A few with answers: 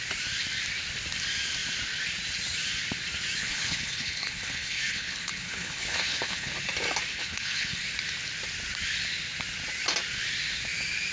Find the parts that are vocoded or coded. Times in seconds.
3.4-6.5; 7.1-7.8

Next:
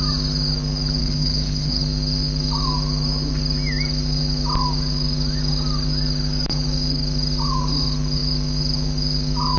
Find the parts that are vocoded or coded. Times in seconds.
1.0-1.8

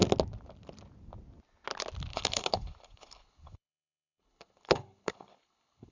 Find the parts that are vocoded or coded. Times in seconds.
2.1-5.9

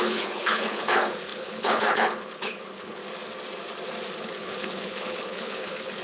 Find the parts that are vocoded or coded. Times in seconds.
0.0-3.0; 4.2-6.0